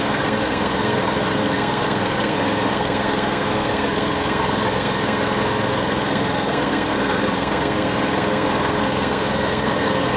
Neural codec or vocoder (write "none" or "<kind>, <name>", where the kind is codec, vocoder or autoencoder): codec, SNAC